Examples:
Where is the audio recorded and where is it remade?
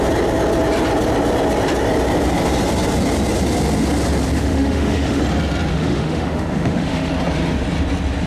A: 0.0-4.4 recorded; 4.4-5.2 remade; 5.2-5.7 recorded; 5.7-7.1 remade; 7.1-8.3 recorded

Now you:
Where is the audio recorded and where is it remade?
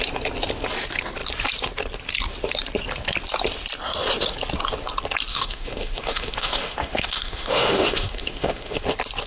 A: 0.0-5.3 recorded; 5.3-8.8 remade; 8.8-9.3 recorded